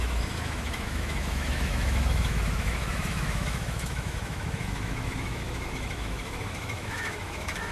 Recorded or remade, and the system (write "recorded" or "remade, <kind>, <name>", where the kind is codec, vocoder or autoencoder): remade, autoencoder, DAC-VAE